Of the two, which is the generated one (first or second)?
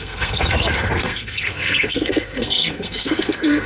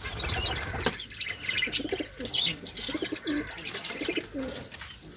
first